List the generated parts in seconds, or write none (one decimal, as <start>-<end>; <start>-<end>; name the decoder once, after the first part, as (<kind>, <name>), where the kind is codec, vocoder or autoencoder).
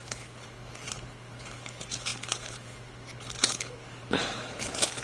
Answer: 0.0-5.0 (codec, HILCodec)